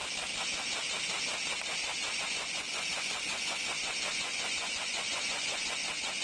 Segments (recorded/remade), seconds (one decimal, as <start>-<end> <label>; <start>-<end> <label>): 0.0-2.2 recorded; 2.2-6.2 remade